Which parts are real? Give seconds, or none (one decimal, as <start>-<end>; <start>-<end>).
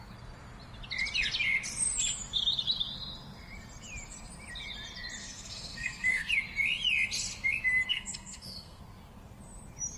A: 0.0-5.2; 6.3-7.9; 8.8-10.0